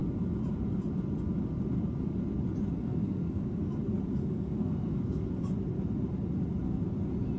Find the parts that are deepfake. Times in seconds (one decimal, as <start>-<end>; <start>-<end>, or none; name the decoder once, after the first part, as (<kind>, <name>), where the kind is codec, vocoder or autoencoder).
2.8-3.7 (codec, SNAC); 4.2-5.3